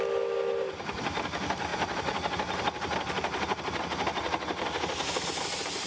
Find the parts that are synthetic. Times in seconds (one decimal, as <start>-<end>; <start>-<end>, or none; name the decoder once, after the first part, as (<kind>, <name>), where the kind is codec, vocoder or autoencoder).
none